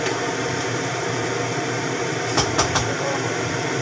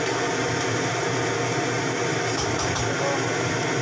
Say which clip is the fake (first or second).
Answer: first